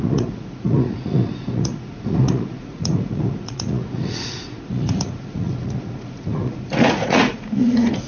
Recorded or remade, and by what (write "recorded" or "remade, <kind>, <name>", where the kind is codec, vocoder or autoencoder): remade, vocoder, Vocos